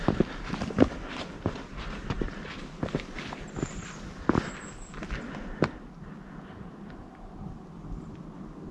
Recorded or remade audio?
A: recorded